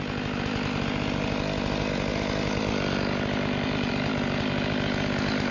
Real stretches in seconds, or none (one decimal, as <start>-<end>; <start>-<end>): 0.0-5.5